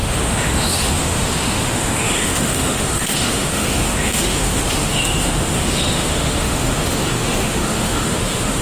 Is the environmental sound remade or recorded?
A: remade